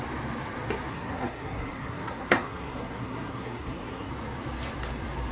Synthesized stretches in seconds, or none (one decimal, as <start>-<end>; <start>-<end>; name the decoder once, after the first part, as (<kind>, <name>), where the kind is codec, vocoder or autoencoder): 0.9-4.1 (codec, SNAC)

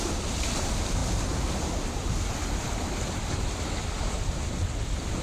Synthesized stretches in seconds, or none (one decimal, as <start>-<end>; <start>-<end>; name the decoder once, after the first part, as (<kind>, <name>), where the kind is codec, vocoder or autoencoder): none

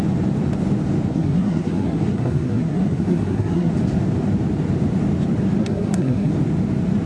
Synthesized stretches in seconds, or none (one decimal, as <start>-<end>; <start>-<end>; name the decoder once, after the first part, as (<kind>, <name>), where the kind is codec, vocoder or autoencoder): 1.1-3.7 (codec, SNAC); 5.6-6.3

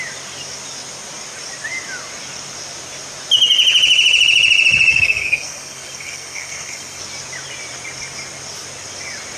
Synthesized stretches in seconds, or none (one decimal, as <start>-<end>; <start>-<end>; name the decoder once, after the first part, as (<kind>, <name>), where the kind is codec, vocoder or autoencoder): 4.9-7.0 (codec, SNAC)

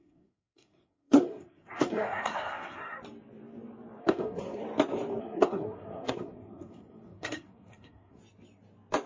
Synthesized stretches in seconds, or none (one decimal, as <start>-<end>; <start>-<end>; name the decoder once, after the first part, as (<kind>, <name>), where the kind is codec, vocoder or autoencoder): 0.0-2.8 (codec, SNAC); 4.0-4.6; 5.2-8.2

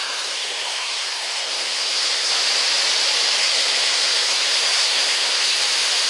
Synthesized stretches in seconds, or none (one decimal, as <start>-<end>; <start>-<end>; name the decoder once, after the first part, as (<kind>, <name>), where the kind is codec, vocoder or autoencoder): 0.0-2.3 (codec, SNAC); 3.4-5.6